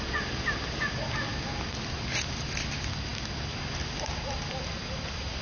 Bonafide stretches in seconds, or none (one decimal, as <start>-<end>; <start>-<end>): 0.0-5.4